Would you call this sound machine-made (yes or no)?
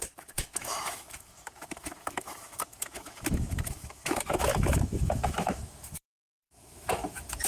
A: yes